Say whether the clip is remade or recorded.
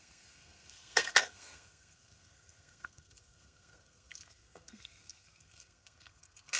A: remade